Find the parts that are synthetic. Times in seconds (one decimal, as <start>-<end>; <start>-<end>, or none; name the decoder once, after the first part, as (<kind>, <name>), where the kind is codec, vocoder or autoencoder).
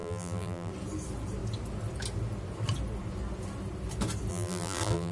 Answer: 0.0-0.7 (vocoder, BigVGAN v2); 4.3-5.1